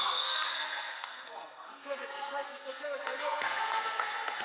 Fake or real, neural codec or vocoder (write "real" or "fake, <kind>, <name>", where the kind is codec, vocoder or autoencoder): fake, codec, SNAC